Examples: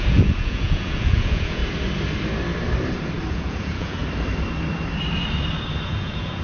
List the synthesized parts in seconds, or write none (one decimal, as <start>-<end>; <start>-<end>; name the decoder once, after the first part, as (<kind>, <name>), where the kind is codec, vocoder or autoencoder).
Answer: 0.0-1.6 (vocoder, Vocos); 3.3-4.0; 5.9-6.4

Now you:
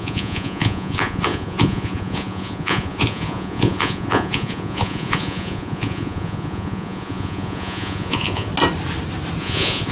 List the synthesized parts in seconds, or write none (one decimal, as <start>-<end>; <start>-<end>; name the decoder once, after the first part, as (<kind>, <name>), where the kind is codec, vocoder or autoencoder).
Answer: 0.0-8.5 (vocoder, Vocos); 9.4-9.9

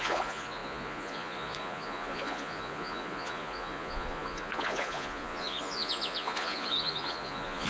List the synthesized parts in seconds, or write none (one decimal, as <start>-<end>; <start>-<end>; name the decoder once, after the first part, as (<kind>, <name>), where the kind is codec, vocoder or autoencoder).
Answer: 0.0-7.7 (vocoder, Vocos)